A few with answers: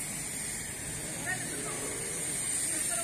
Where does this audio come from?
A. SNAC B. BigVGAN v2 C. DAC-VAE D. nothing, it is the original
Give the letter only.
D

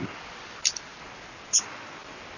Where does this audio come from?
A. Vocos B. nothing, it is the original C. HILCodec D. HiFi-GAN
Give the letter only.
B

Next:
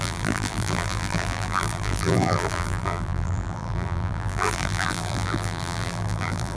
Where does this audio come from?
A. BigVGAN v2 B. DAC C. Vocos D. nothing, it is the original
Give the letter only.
A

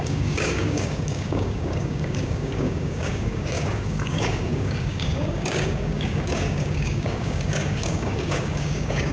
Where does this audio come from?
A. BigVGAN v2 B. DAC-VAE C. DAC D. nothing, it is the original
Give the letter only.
C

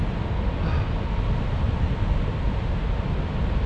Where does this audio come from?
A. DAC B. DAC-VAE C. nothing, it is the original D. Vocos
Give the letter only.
C